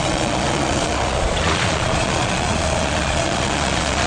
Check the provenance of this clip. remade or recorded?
remade